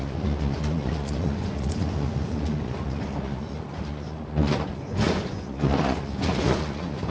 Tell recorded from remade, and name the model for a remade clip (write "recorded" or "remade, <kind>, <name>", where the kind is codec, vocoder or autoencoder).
remade, vocoder, Vocos